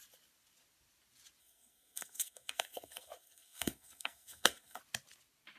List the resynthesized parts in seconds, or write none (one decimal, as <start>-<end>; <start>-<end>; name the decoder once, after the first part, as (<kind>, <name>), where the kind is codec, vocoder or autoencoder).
1.4-4.8 (codec, SNAC)

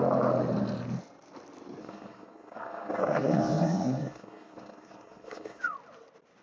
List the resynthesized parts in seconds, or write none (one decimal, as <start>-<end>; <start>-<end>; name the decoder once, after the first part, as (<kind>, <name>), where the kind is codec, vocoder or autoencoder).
1.8-5.6 (codec, SNAC)

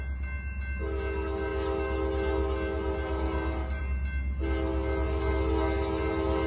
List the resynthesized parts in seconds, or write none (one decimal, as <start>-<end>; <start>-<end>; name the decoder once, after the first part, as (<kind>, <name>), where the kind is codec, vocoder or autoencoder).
none